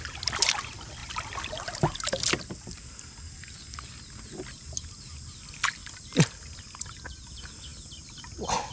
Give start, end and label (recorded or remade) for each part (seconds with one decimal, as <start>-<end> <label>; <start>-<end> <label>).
0.0-8.7 recorded